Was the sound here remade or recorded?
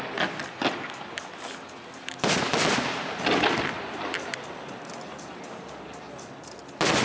recorded